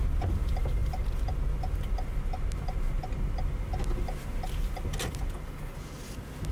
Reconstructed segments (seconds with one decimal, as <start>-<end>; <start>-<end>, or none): none